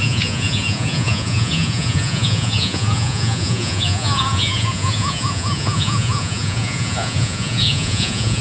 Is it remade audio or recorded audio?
remade